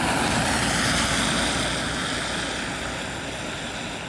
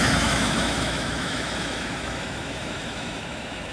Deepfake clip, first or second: second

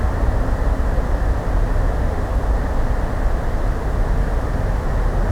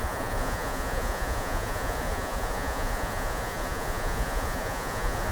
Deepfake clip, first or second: second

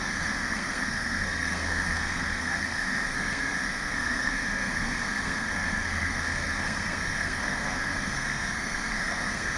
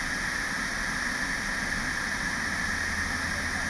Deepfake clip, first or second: first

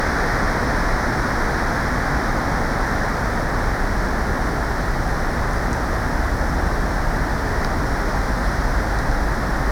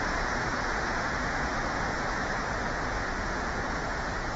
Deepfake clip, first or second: second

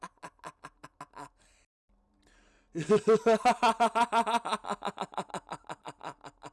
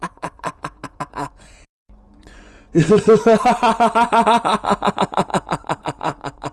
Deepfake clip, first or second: second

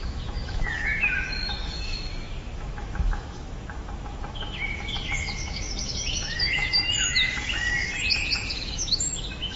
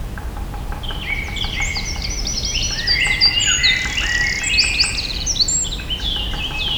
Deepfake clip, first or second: first